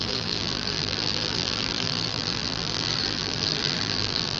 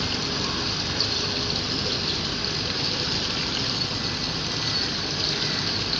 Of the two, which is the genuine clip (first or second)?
second